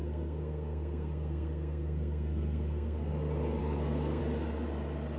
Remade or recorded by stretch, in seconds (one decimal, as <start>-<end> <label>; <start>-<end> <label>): 0.0-3.1 remade; 3.1-3.6 recorded; 3.6-4.2 remade; 4.2-5.2 recorded